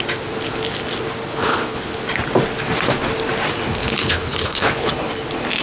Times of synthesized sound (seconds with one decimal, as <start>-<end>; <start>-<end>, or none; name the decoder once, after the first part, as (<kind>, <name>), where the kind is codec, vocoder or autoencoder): 1.3-2.0 (codec, HILCodec); 3.8-4.9